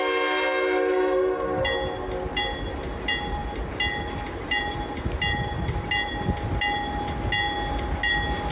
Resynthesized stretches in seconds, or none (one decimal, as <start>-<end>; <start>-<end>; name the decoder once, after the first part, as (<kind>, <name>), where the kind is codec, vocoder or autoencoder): none